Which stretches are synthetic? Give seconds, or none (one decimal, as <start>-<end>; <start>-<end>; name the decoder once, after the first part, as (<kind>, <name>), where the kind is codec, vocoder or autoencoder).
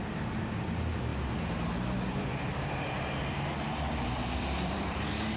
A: 0.0-1.1 (vocoder, BigVGAN v2); 4.0-5.4